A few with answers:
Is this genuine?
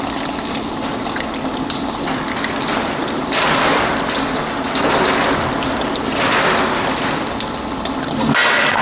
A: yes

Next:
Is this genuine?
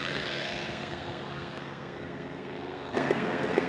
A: no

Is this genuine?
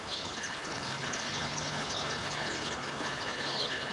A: no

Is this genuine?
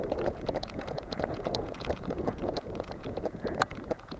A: no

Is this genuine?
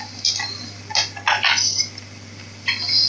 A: yes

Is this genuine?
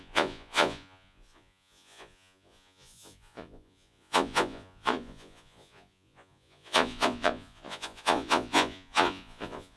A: no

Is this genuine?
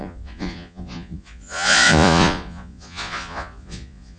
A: no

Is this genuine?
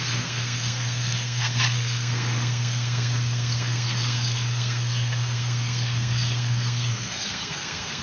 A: no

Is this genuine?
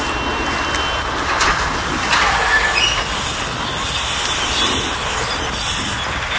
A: yes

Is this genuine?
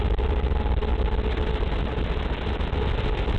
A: yes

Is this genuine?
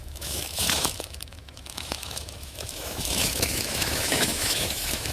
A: no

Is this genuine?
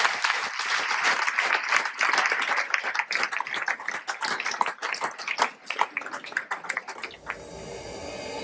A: yes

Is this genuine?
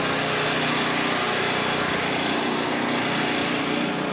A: yes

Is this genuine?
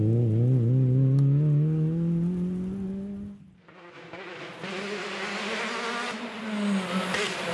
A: yes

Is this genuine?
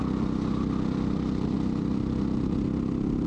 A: yes